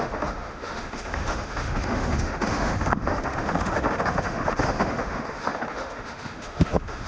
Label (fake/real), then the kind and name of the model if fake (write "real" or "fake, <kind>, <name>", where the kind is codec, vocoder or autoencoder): fake, autoencoder, DAC-VAE